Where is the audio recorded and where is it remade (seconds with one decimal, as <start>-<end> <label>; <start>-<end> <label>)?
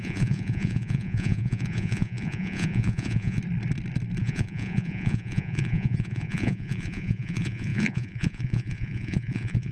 0.0-3.4 remade; 3.4-4.2 recorded; 4.2-9.7 remade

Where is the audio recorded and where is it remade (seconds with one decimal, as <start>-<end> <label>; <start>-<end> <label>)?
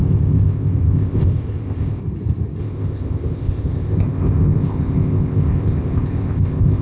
0.0-2.0 remade; 2.0-2.6 recorded; 2.6-6.8 remade